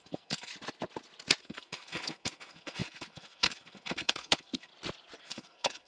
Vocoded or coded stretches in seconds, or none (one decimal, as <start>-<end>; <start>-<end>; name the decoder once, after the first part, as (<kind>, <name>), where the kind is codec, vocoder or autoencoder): 0.0-0.5 (codec, SNAC); 1.4-4.7; 5.2-5.9